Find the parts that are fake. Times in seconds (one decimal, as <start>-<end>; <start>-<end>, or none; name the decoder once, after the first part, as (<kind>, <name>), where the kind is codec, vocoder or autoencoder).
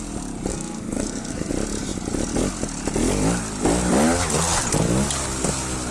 0.5-1.5 (codec, SNAC)